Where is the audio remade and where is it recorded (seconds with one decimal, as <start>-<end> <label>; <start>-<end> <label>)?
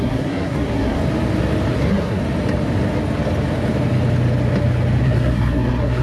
0.0-1.0 remade; 1.0-1.7 recorded; 1.7-2.2 remade; 2.2-5.0 recorded; 5.0-6.0 remade